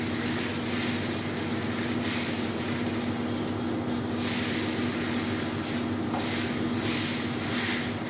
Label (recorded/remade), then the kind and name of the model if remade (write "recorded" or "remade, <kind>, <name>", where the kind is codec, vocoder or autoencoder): recorded